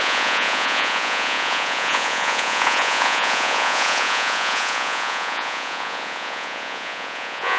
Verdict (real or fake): fake